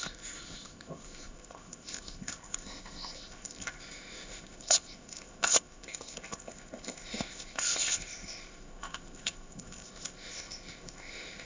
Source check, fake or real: fake